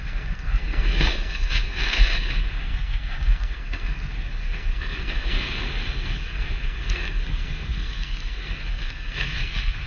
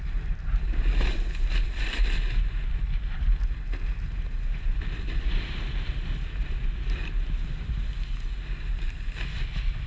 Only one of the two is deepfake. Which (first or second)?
first